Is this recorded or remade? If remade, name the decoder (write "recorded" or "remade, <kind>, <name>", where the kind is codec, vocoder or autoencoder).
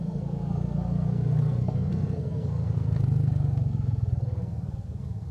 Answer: remade, codec, SNAC